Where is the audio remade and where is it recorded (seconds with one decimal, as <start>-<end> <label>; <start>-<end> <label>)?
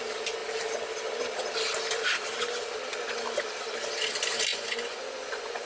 0.0-4.5 recorded; 4.5-5.7 remade